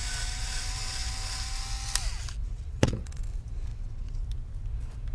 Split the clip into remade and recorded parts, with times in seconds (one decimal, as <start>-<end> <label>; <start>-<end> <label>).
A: 0.0-2.4 recorded; 2.4-3.2 remade; 3.2-3.7 recorded; 3.7-4.2 remade; 4.2-5.1 recorded